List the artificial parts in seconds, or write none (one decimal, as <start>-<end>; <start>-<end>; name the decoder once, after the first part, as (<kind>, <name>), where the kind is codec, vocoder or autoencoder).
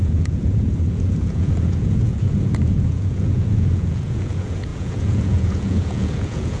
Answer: 0.0-6.6 (vocoder, Vocos)